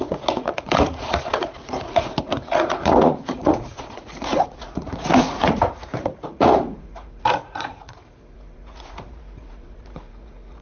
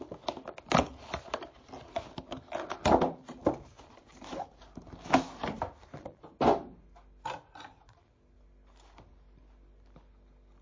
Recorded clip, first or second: second